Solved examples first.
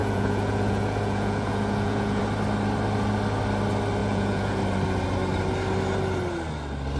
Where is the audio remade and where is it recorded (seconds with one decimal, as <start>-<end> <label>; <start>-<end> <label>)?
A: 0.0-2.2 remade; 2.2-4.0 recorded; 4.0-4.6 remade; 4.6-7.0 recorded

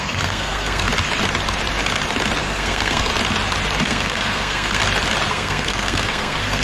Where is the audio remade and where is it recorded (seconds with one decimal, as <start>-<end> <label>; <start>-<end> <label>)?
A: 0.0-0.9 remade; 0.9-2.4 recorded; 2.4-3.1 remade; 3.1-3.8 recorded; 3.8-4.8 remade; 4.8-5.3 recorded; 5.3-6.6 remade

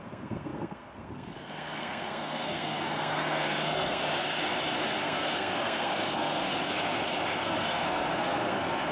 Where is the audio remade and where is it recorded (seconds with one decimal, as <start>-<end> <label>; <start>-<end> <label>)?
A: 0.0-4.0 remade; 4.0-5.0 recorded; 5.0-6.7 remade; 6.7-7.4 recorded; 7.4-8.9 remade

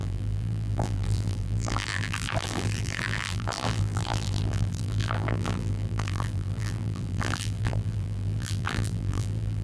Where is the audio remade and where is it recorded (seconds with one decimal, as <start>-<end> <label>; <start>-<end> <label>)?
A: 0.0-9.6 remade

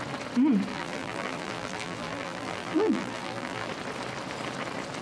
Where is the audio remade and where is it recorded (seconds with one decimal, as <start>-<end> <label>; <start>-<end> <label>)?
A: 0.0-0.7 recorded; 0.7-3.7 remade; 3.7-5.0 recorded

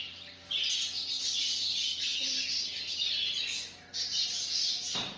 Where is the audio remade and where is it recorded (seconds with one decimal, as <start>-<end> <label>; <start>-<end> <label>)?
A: 0.0-5.2 recorded

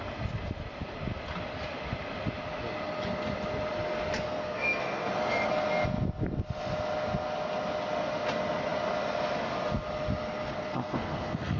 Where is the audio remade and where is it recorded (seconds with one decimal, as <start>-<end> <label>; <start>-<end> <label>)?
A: 0.0-4.2 recorded; 4.2-5.5 remade; 5.5-10.5 recorded; 10.5-11.6 remade

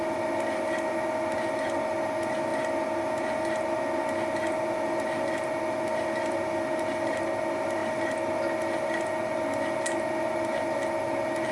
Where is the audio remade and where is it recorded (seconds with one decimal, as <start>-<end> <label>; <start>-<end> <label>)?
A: 0.0-11.5 recorded